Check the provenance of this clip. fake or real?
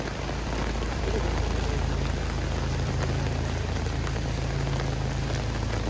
fake